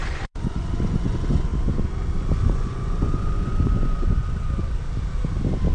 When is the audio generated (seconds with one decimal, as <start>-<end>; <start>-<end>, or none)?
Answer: 0.0-1.5; 2.2-4.2